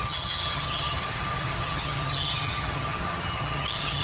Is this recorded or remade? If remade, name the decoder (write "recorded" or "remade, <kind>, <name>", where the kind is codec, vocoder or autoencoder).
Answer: remade, vocoder, HiFi-GAN